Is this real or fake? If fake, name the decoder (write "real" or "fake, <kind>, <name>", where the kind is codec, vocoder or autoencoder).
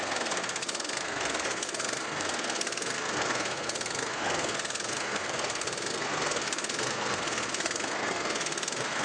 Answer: fake, codec, SNAC